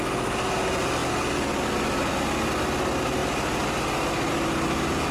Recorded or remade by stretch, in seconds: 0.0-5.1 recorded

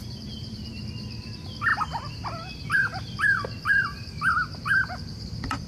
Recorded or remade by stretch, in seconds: 0.0-0.7 remade; 0.7-5.7 recorded

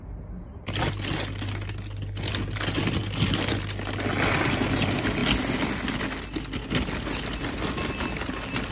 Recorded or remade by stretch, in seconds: 0.0-8.7 recorded

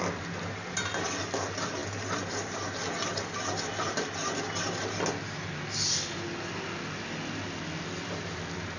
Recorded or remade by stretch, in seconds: 0.0-8.8 recorded

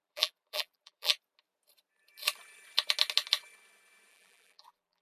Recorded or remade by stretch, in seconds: 0.0-1.1 remade; 1.1-4.1 recorded; 4.1-5.0 remade